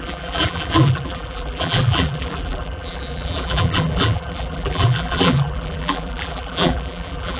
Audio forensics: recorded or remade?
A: remade